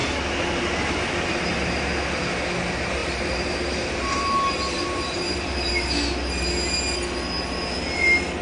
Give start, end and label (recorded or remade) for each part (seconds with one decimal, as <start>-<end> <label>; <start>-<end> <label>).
0.0-3.0 recorded; 3.0-5.7 remade; 5.7-8.4 recorded